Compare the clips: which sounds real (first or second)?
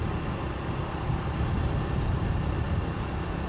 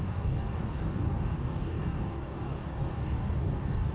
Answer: first